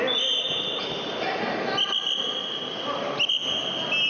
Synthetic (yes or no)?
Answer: no